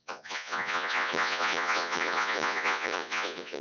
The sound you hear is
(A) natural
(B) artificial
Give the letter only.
B